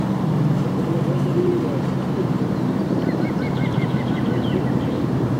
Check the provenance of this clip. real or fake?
fake